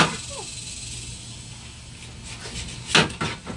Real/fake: real